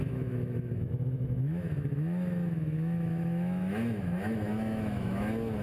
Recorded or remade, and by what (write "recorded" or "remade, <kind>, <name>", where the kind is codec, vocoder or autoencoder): remade, autoencoder, DAC-VAE